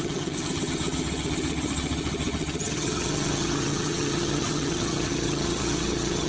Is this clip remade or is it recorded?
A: remade